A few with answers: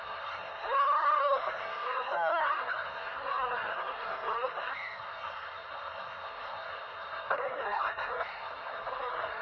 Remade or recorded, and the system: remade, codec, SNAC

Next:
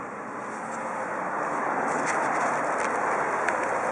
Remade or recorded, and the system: recorded